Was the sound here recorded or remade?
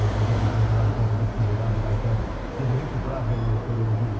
recorded